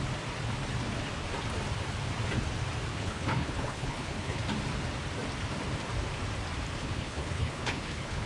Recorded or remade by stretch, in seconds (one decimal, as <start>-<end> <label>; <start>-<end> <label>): 0.0-2.9 recorded; 2.9-4.4 remade; 4.4-6.8 recorded; 6.8-8.3 remade